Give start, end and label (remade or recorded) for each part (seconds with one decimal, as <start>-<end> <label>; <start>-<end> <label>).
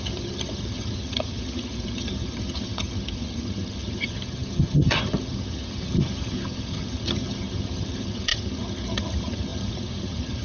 0.0-10.4 remade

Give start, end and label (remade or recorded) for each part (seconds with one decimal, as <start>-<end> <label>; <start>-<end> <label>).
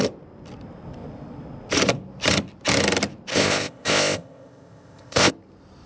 0.0-3.3 recorded; 3.3-5.3 remade; 5.3-5.9 recorded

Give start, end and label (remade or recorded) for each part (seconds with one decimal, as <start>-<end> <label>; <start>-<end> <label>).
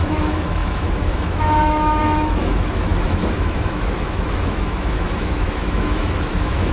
0.0-6.7 remade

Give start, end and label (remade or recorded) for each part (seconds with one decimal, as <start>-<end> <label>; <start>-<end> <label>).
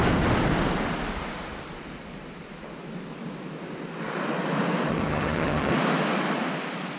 0.0-4.9 recorded; 4.9-5.7 remade; 5.7-7.0 recorded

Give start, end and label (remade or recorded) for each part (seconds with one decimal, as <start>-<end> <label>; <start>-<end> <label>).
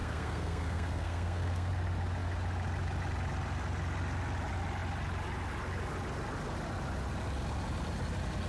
0.0-1.7 remade; 1.7-8.5 recorded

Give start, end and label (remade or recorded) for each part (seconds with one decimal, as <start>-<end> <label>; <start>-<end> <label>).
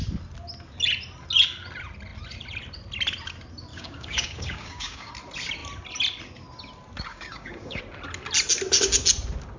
0.0-3.7 recorded; 3.7-5.1 remade; 5.1-7.1 recorded; 7.1-7.8 remade; 7.8-9.6 recorded